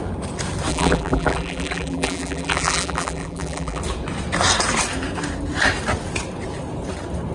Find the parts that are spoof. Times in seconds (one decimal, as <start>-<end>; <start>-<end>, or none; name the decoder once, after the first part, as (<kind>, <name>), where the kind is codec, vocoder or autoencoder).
0.7-3.8 (vocoder, BigVGAN v2)